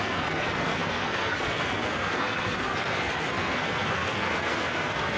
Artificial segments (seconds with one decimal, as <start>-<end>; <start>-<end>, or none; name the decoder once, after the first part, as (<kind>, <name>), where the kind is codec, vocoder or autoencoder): 0.0-5.2 (codec, SNAC)